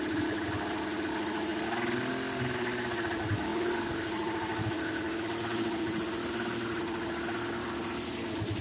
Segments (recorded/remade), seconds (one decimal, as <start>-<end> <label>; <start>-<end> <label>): 0.0-8.6 recorded